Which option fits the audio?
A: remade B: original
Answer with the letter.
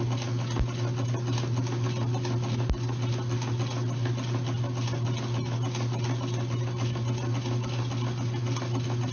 B